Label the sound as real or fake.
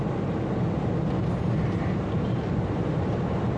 real